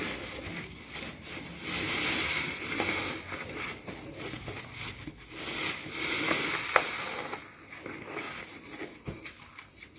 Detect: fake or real real